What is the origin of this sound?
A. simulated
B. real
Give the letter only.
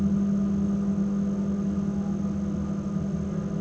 B